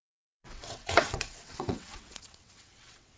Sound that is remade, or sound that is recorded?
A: remade